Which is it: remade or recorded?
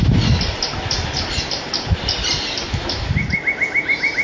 recorded